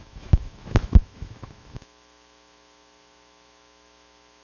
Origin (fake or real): fake